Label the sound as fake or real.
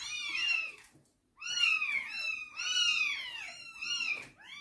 fake